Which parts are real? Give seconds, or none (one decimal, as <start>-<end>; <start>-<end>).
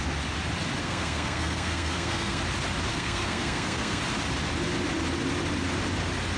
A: 0.0-0.8; 2.4-2.9; 4.0-6.4